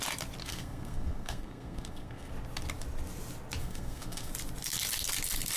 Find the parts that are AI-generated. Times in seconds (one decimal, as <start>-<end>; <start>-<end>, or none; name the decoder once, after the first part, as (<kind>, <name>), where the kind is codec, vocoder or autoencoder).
0.4-2.3 (codec, SNAC); 3.6-4.3